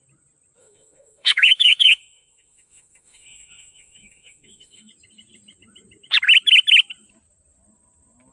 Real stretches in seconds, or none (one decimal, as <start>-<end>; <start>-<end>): 0.0-0.6; 4.9-8.3